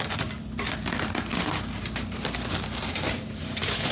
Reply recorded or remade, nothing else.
recorded